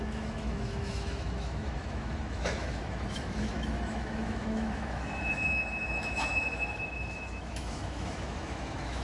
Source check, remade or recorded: remade